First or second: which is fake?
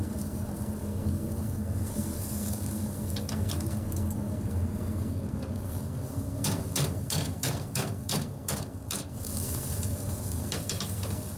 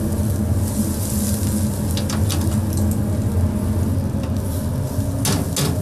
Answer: first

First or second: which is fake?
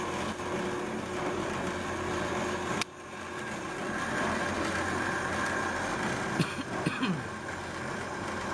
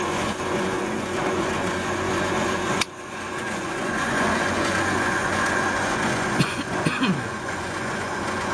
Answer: second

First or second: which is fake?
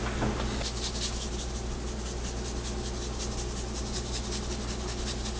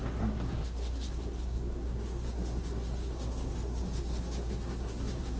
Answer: second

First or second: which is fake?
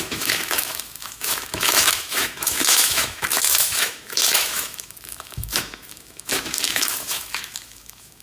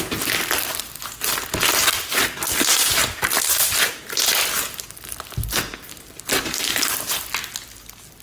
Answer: first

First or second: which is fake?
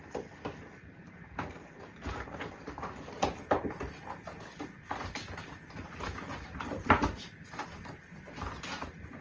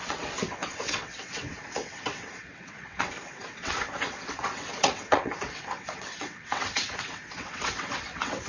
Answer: second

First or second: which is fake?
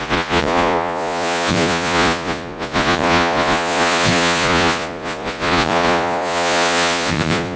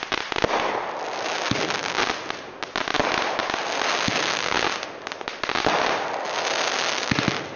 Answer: first